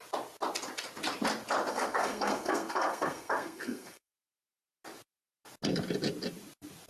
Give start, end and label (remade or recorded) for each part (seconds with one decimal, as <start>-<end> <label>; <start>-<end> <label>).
0.0-1.7 recorded; 1.7-4.1 remade; 4.1-6.9 recorded